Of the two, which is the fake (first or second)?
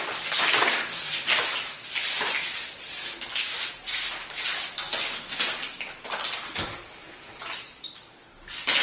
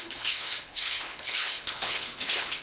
second